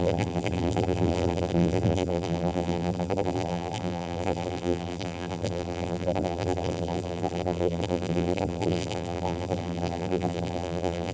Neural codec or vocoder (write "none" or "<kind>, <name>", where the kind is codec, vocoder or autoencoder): vocoder, BigVGAN v2